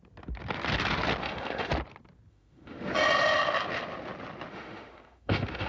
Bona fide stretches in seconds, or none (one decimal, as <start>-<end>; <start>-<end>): 0.0-1.2; 1.7-2.3; 2.9-4.5